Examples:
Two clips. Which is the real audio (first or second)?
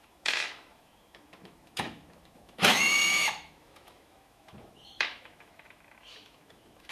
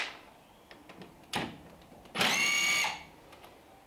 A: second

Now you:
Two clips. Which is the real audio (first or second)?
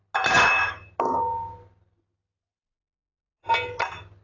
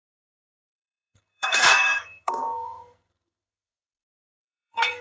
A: first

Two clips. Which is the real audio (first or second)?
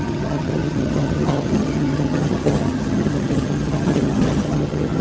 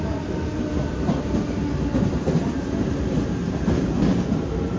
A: second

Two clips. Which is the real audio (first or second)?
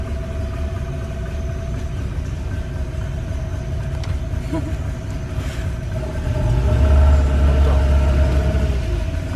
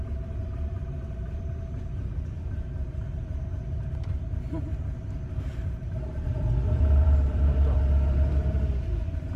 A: first